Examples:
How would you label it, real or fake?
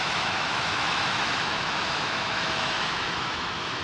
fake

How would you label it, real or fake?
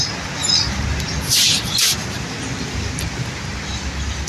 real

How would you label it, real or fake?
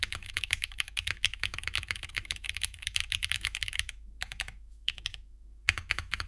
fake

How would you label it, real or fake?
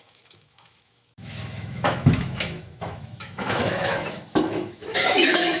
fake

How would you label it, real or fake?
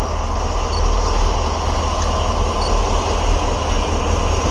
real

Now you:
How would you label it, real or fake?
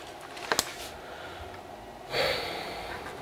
real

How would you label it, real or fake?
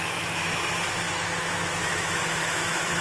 fake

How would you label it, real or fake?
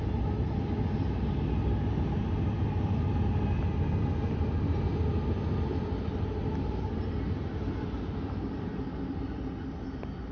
real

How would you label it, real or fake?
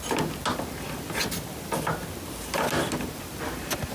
real